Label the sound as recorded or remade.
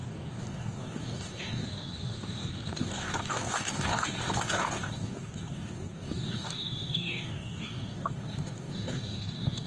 remade